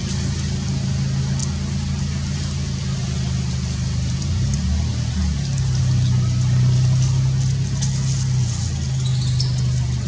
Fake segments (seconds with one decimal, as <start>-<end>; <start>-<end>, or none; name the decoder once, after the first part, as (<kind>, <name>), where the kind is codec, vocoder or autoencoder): none